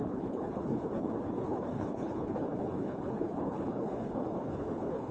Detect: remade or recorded remade